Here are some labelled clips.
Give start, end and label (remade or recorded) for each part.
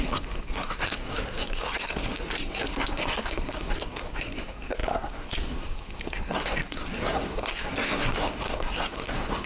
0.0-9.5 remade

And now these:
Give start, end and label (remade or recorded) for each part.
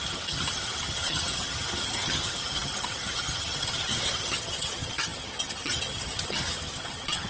0.0-7.3 remade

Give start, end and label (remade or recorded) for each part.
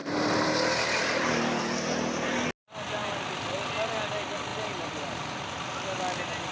0.0-1.6 remade; 1.6-3.0 recorded; 3.0-3.7 remade; 3.7-4.5 recorded; 4.5-5.4 remade; 5.4-6.5 recorded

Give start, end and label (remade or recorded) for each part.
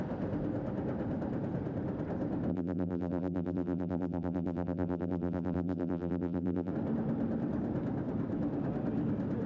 0.0-2.5 recorded; 2.5-6.7 remade; 6.7-9.5 recorded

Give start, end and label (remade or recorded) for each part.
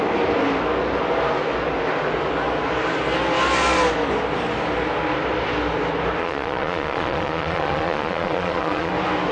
0.0-6.2 recorded; 6.2-8.9 remade; 8.9-9.3 recorded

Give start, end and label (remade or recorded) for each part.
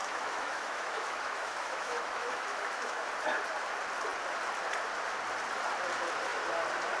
0.0-3.1 remade; 3.1-7.0 recorded